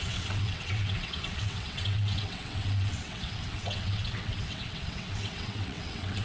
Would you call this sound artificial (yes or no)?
yes